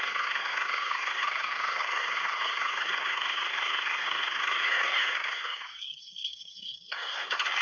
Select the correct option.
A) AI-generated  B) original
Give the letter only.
A